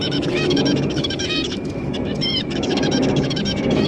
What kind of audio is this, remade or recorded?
remade